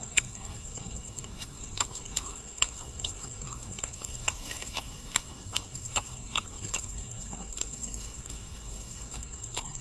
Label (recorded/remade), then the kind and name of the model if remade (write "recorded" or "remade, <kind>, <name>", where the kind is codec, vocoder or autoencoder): remade, codec, SNAC